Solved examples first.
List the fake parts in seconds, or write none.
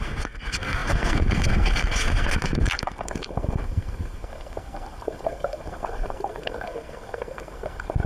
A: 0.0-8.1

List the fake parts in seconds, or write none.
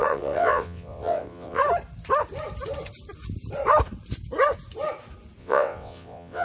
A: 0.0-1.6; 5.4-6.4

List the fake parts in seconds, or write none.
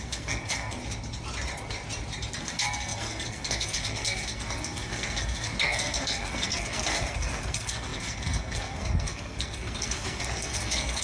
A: 0.0-0.8; 2.4-11.0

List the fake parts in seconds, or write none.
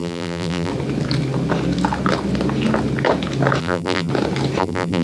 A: 0.0-0.7; 3.6-4.1; 4.6-5.0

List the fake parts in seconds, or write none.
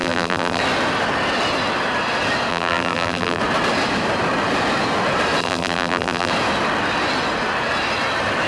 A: 0.0-0.6; 2.5-3.4; 5.4-6.3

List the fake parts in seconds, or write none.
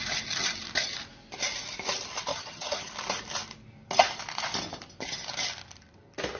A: 2.3-2.9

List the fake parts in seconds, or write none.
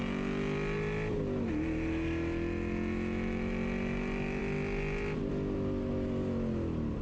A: none